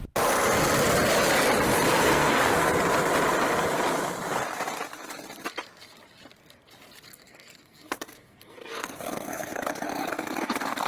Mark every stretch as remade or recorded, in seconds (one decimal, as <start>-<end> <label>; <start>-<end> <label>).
0.0-1.9 recorded; 1.9-2.7 remade; 2.7-7.1 recorded; 7.1-10.9 remade